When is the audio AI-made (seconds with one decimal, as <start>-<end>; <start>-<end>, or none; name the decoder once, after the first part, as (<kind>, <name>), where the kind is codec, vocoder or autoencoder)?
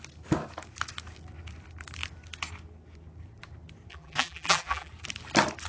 3.9-4.9 (vocoder, BigVGAN v2)